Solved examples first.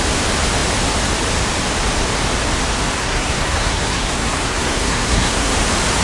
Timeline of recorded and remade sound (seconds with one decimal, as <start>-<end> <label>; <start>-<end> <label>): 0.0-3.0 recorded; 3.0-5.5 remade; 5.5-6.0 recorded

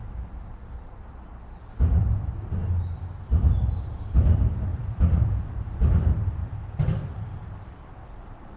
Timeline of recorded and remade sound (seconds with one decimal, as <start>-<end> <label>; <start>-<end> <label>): 0.0-0.6 remade; 0.6-3.3 recorded; 3.3-8.6 remade

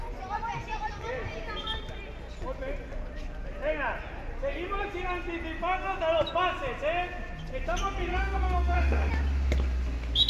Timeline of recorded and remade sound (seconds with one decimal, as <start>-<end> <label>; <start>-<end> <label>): 0.0-8.1 recorded; 8.1-9.1 remade; 9.1-10.3 recorded